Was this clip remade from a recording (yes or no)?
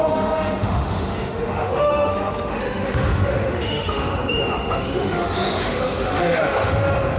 yes